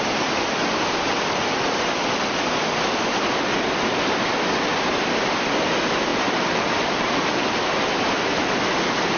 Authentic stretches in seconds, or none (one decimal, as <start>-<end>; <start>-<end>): 0.0-6.1; 7.7-9.2